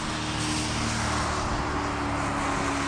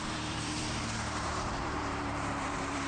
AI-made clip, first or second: second